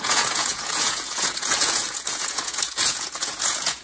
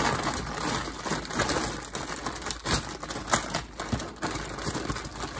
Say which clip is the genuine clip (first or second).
second